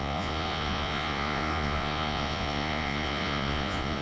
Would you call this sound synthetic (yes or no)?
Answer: yes